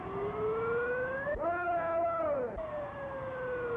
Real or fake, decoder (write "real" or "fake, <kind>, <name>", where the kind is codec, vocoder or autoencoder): real